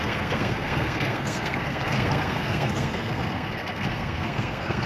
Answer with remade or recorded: remade